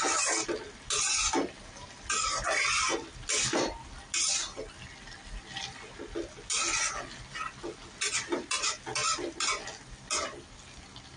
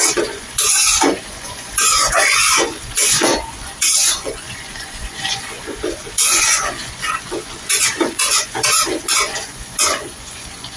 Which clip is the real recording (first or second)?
first